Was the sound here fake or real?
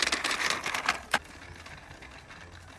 real